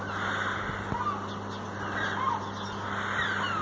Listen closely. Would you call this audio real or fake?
real